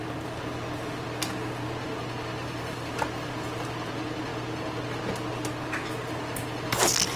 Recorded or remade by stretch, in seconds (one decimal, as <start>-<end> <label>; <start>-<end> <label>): 0.0-2.4 recorded; 2.4-3.9 remade; 3.9-7.2 recorded